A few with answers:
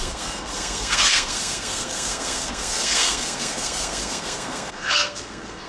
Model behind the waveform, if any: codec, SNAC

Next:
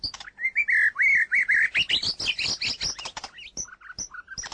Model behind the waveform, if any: none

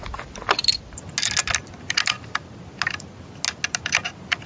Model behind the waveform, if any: none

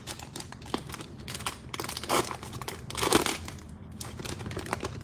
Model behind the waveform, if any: vocoder, BigVGAN v2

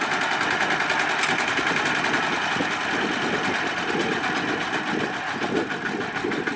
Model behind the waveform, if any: none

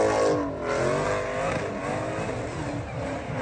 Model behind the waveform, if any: none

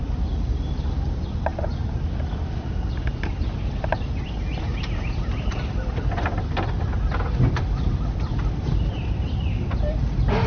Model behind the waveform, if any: none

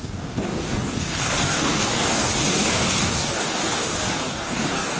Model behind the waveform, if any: codec, DAC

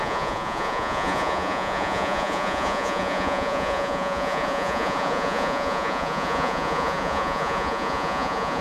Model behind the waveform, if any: vocoder, Vocos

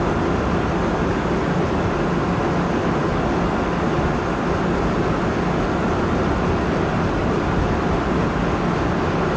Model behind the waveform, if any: none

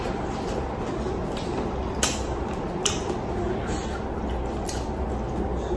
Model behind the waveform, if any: none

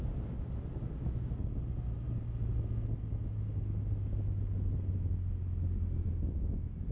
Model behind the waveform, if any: none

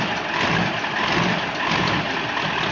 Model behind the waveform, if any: vocoder, BigVGAN v2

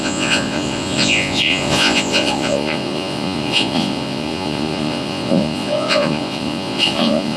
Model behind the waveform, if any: vocoder, Vocos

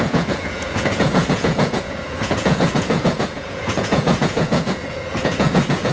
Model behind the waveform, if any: vocoder, Vocos